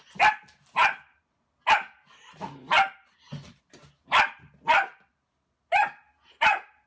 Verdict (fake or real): real